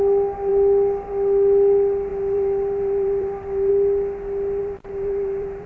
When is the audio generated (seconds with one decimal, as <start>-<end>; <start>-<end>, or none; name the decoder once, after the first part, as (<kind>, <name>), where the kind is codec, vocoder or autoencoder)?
2.1-3.7 (vocoder, BigVGAN v2); 4.6-5.7